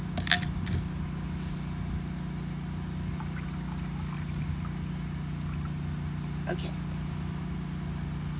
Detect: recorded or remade recorded